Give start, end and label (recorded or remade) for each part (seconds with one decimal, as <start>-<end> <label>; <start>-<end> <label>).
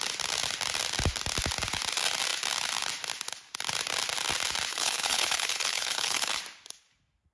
0.0-4.7 recorded; 4.7-6.4 remade; 6.4-7.3 recorded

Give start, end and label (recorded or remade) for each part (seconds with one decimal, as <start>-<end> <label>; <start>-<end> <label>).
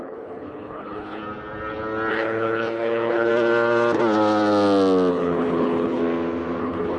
0.0-1.2 remade; 1.2-2.1 recorded; 2.1-3.3 remade; 3.3-5.1 recorded; 5.1-6.0 remade; 6.0-6.6 recorded; 6.6-7.0 remade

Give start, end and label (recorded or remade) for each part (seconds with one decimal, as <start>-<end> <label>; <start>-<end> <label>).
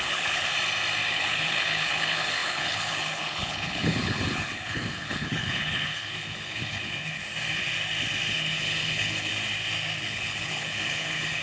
0.0-0.5 remade; 0.5-1.1 recorded; 1.1-7.2 remade; 7.2-8.3 recorded; 8.3-9.3 remade; 9.3-10.0 recorded; 10.0-11.4 remade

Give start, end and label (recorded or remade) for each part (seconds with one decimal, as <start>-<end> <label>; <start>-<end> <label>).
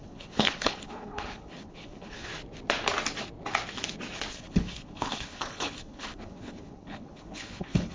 0.0-2.3 remade; 2.3-4.3 recorded; 4.3-7.9 remade